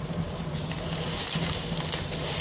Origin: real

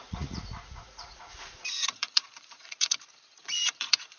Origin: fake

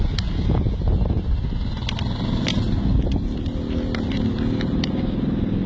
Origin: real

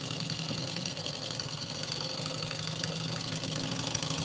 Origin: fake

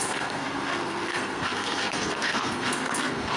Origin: fake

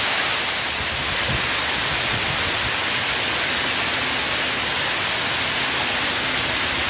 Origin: real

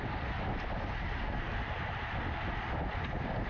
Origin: real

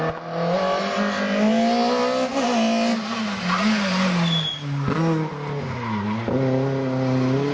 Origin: real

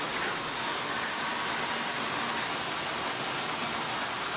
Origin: real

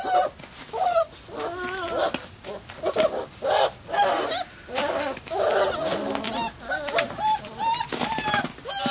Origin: real